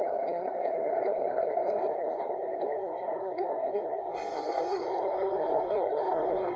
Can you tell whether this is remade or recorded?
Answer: remade